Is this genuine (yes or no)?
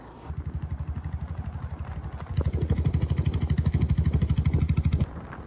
yes